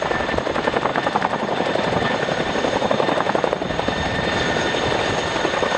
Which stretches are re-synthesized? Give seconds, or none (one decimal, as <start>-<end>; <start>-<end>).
0.9-4.4